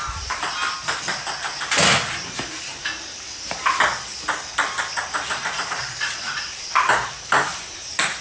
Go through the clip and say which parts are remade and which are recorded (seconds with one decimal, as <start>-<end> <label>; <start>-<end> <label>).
0.0-0.6 remade; 0.6-2.1 recorded; 2.1-2.7 remade; 2.7-6.7 recorded; 6.7-8.2 remade